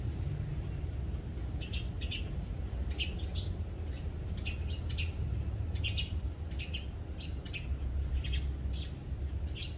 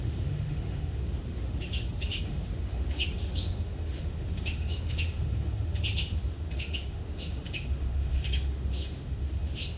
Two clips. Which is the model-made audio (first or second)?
second